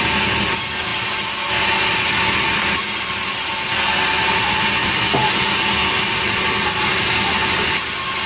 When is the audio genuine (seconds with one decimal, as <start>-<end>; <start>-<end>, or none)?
0.0-8.3